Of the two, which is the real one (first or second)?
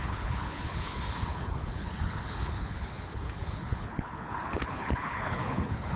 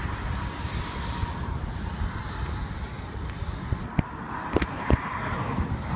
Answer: second